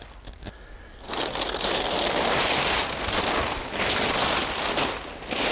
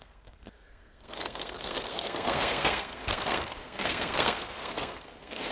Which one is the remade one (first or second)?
second